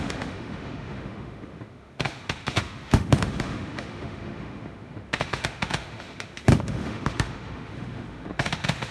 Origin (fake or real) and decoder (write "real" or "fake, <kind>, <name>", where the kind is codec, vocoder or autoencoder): fake, autoencoder, DAC-VAE